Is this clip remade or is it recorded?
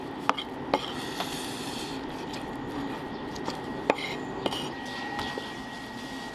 recorded